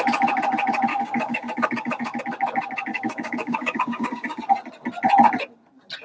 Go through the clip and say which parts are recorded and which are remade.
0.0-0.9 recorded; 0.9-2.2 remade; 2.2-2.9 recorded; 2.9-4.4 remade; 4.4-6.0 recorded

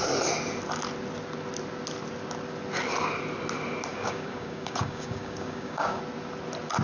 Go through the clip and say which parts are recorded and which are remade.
0.0-3.9 recorded; 3.9-6.0 remade; 6.0-6.8 recorded

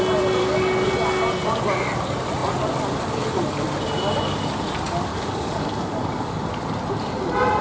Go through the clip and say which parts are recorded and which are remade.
0.0-0.4 recorded; 0.4-0.9 remade; 0.9-5.1 recorded; 5.1-6.5 remade; 6.5-7.6 recorded

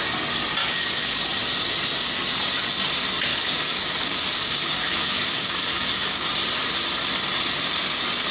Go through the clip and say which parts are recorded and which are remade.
0.0-0.6 recorded; 0.6-1.2 remade; 1.2-3.3 recorded; 3.3-6.3 remade; 6.3-8.3 recorded